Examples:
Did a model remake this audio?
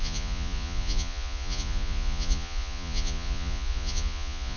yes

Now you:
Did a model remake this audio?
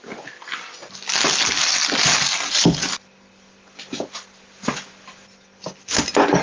no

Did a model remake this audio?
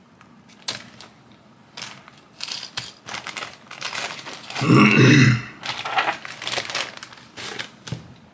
no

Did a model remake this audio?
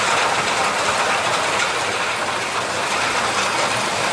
no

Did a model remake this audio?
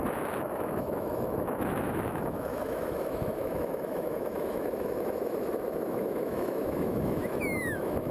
yes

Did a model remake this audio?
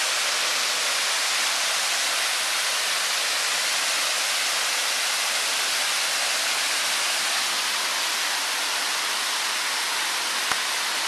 no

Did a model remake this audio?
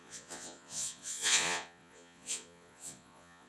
yes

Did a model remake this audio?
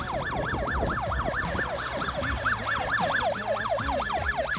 no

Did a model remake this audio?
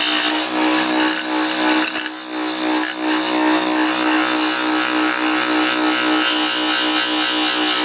no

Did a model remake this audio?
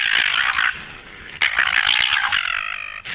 no